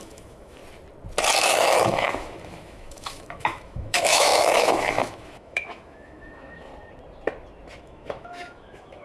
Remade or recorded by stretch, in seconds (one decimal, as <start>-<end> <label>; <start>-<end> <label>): 0.0-0.6 remade; 0.6-1.4 recorded; 1.4-6.7 remade; 6.7-7.8 recorded; 7.8-9.0 remade